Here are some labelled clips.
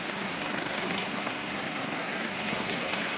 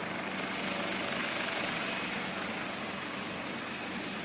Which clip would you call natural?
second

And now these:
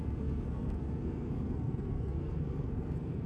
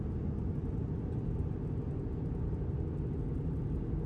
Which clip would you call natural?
second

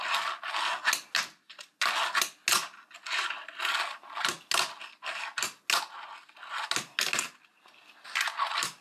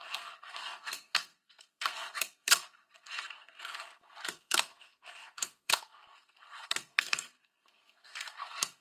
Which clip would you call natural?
first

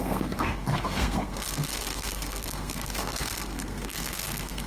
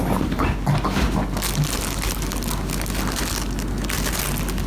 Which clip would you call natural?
second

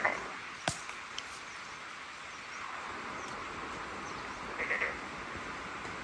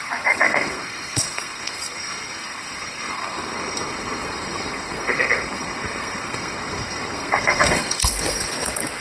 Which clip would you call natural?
first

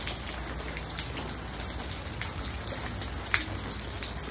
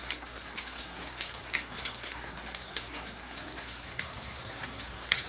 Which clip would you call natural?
first